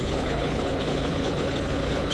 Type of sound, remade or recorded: remade